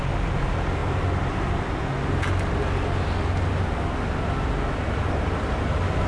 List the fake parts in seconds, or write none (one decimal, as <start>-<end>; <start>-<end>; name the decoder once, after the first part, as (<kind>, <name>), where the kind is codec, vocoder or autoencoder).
none